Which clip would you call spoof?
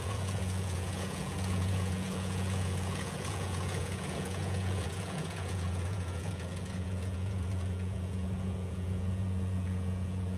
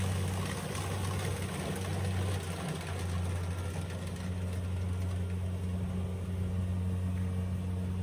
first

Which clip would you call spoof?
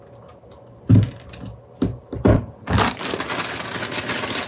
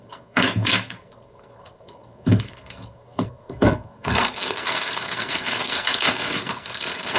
second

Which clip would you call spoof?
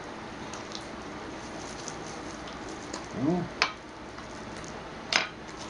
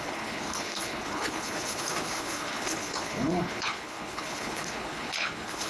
second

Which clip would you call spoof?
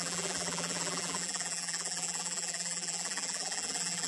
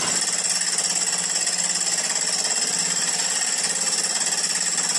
first